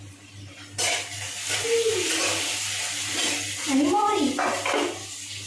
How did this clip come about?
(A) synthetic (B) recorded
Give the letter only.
B